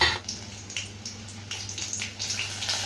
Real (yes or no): yes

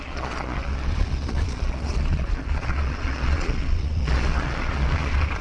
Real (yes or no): no